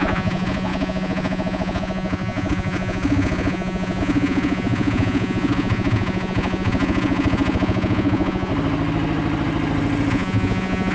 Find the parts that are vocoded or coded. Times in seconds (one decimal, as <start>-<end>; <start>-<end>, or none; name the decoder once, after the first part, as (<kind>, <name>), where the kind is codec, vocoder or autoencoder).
0.0-8.5 (vocoder, Vocos); 10.1-10.9